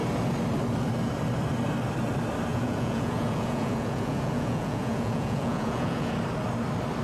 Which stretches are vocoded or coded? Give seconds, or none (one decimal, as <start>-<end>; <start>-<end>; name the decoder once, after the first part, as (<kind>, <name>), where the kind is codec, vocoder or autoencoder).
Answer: 2.5-6.1 (vocoder, Vocos)